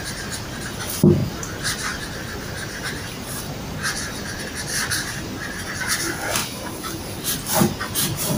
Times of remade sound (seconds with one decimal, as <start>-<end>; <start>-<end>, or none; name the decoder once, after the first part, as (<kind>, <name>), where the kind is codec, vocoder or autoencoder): 1.2-4.4 (vocoder, BigVGAN v2); 6.4-7.0